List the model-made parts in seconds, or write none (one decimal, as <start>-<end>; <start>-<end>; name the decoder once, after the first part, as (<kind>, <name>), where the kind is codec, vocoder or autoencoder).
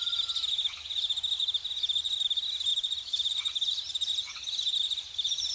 2.7-5.5 (vocoder, BigVGAN v2)